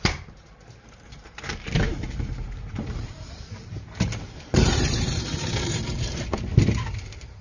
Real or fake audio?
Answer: fake